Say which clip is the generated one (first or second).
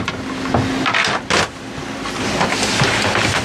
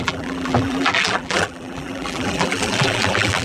second